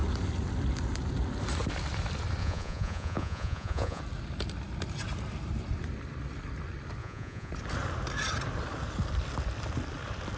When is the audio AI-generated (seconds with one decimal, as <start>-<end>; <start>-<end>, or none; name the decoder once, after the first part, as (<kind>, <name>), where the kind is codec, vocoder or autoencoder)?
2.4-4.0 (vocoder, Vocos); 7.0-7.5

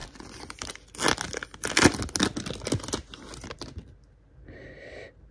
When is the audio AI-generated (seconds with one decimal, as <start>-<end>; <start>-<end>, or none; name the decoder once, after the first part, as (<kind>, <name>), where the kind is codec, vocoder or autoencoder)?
0.0-0.7 (vocoder, BigVGAN v2)

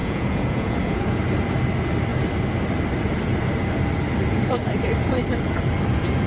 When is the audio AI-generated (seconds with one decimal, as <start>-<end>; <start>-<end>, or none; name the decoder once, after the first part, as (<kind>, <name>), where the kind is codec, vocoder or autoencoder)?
0.0-1.2 (vocoder, Vocos)